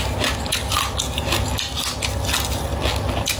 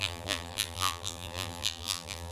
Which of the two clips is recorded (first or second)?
first